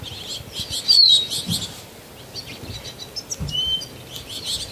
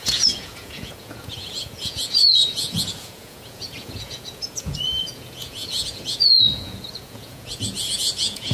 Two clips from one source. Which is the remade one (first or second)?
second